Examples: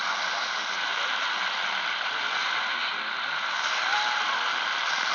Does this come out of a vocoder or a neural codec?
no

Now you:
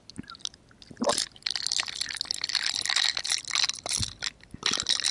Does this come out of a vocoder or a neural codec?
no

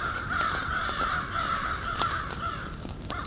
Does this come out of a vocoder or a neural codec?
yes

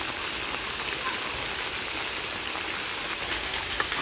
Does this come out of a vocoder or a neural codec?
no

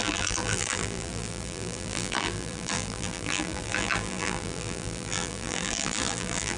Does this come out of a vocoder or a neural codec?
yes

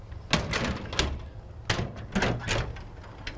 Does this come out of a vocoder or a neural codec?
no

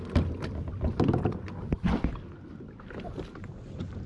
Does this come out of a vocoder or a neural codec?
no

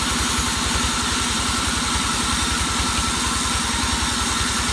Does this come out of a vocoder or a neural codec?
yes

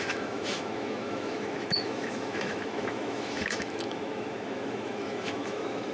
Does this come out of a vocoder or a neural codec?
yes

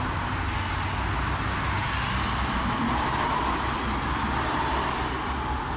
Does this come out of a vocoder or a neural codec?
no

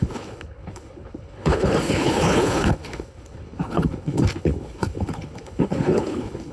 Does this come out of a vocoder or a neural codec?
yes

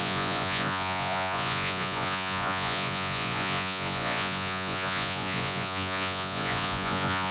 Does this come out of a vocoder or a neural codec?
yes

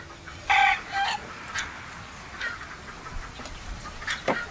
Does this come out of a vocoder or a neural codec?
no